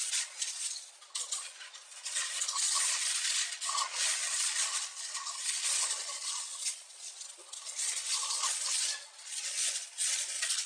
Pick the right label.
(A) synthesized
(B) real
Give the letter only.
A